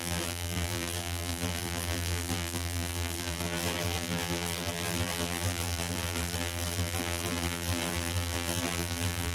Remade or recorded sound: remade